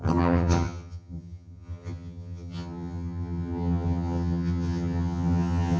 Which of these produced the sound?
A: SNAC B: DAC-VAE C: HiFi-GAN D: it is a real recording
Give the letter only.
C